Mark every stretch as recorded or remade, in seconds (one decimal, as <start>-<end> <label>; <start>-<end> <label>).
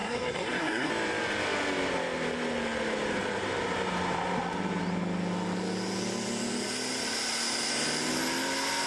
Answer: 0.0-0.9 remade; 0.9-8.9 recorded